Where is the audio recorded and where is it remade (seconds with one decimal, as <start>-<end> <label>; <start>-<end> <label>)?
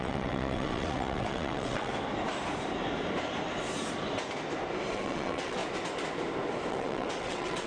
0.0-1.9 remade; 1.9-4.9 recorded; 4.9-5.6 remade; 5.6-6.7 recorded; 6.7-7.7 remade